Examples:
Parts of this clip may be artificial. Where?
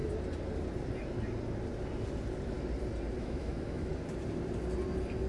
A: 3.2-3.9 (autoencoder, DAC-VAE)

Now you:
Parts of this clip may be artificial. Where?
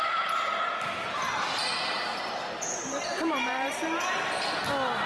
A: 1.0-4.1 (vocoder, BigVGAN v2)